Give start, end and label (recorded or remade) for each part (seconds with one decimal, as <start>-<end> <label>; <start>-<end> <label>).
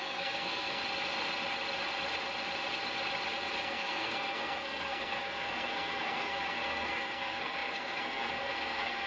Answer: 0.0-0.8 remade; 0.8-3.6 recorded; 3.6-9.1 remade